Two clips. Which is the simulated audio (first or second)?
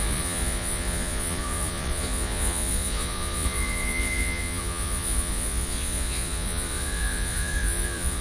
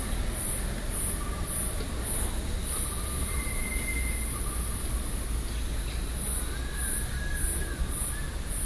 first